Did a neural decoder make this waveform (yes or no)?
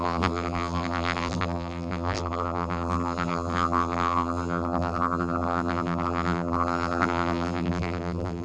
yes